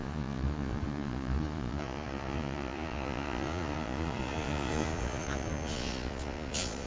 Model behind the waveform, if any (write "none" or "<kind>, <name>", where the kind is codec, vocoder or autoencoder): vocoder, Vocos